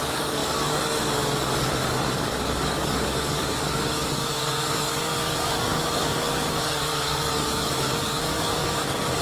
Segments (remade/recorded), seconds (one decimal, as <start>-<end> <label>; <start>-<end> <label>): 0.0-9.2 remade

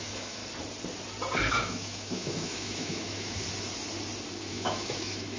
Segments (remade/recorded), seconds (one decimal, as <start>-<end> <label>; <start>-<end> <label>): 0.0-0.4 remade; 0.4-1.5 recorded; 1.5-3.4 remade; 3.4-4.5 recorded; 4.5-5.4 remade

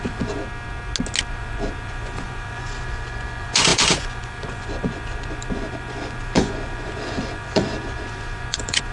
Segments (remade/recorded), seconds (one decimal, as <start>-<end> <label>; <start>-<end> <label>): 0.0-0.4 remade; 0.4-1.3 recorded; 1.3-8.9 remade

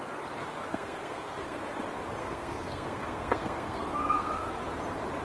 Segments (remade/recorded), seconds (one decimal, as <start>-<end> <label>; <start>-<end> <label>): 0.0-0.7 recorded; 0.7-1.6 remade; 1.6-2.2 recorded; 2.2-4.3 remade; 4.3-5.2 recorded

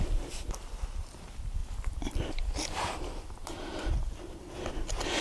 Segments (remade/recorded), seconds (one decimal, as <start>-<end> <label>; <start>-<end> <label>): 0.0-5.2 recorded